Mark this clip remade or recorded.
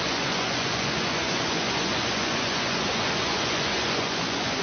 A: remade